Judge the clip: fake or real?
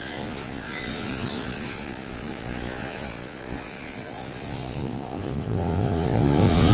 fake